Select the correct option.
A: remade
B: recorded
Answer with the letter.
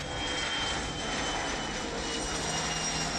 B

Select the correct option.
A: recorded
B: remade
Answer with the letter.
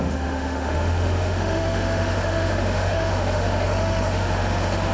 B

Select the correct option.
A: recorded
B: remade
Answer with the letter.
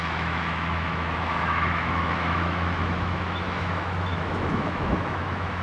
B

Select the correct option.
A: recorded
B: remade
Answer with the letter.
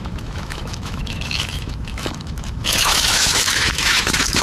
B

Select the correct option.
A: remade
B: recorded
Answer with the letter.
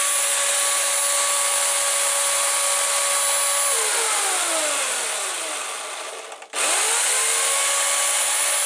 B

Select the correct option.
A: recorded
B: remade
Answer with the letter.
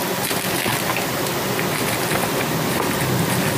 A